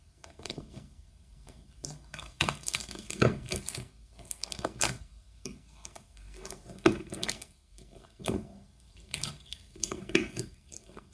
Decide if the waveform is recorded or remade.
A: remade